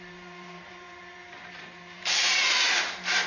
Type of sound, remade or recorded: remade